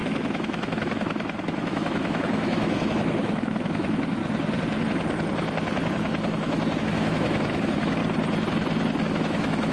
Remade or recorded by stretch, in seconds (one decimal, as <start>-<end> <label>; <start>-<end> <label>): 0.0-4.2 remade; 4.2-6.8 recorded; 6.8-8.0 remade; 8.0-9.0 recorded; 9.0-9.7 remade